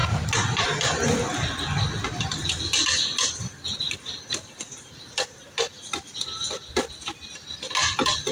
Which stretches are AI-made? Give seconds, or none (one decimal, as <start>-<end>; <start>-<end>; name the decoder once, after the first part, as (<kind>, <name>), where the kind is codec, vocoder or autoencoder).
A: none